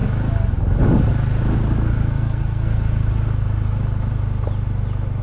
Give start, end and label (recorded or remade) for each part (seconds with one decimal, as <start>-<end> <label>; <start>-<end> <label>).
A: 0.0-2.0 recorded; 2.0-3.1 remade; 3.1-5.2 recorded